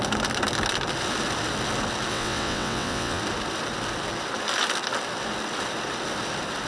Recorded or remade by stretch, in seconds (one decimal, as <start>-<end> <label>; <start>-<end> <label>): 0.0-2.1 recorded; 2.1-3.2 remade; 3.2-6.7 recorded

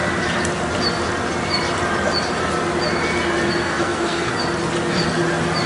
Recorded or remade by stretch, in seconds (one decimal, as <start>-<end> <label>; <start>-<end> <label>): 0.0-3.5 recorded; 3.5-4.3 remade; 4.3-5.7 recorded

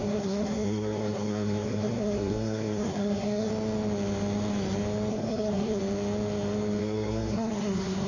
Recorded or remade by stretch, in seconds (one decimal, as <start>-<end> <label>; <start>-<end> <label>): 0.0-3.5 remade; 3.5-5.1 recorded; 5.1-5.8 remade; 5.8-6.8 recorded; 6.8-8.1 remade

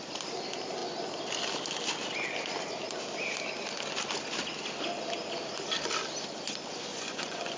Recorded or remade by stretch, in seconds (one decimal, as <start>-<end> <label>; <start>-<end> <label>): 0.0-6.9 recorded; 6.9-7.6 remade

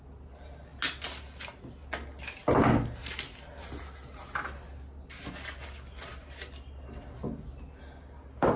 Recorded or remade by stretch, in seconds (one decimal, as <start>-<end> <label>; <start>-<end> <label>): 0.0-3.0 recorded; 3.0-3.8 remade; 3.8-8.6 recorded

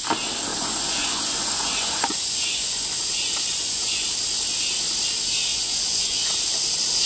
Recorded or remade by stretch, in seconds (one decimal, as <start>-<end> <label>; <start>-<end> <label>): 0.0-0.5 recorded; 0.5-4.1 remade; 4.1-5.5 recorded; 5.5-6.3 remade; 6.3-7.1 recorded